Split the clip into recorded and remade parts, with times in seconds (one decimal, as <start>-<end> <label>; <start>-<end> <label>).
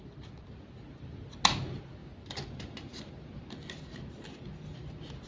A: 0.0-5.3 recorded